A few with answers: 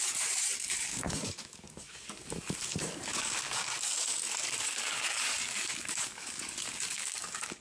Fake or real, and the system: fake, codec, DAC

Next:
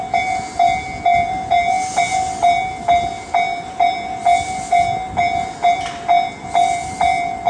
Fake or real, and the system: real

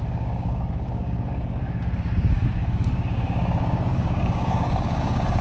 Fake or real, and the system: fake, codec, DAC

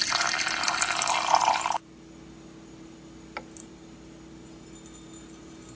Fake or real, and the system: real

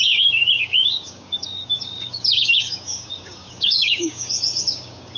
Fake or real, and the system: fake, codec, DAC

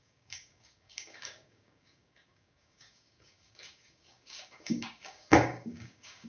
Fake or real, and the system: fake, codec, DAC